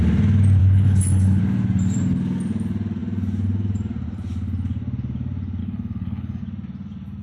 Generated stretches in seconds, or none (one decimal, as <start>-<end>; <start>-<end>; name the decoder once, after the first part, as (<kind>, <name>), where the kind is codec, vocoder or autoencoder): 0.6-1.4 (codec, HILCodec); 5.6-6.4